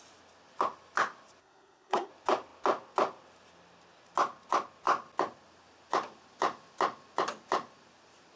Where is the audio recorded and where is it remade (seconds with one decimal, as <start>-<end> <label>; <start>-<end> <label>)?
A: 0.0-1.4 recorded; 1.4-2.1 remade; 2.1-8.4 recorded